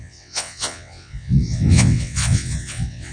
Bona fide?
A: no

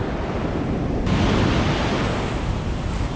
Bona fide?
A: yes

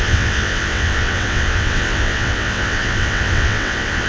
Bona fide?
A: no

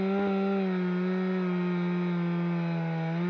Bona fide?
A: yes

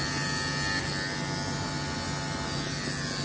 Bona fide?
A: yes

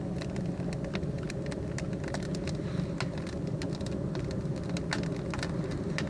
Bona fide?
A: yes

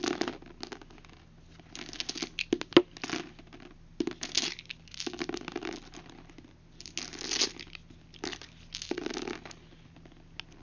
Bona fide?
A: yes